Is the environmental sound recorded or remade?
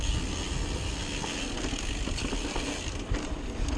recorded